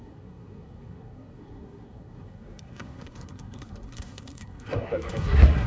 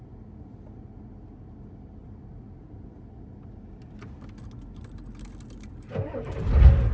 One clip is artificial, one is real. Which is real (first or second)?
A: second